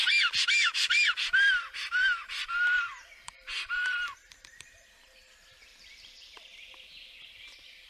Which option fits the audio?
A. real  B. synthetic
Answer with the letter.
B